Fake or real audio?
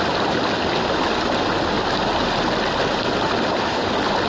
real